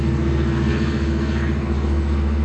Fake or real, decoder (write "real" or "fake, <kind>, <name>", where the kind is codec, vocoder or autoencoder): fake, codec, SNAC